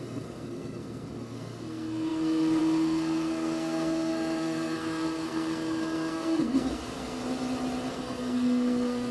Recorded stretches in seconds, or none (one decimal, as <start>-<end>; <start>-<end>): 7.2-7.9